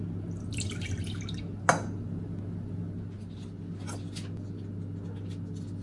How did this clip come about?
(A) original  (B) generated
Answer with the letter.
A